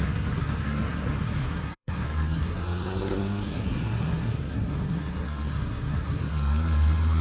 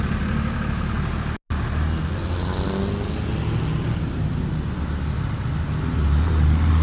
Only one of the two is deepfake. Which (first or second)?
first